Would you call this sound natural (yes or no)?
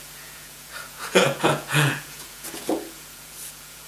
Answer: no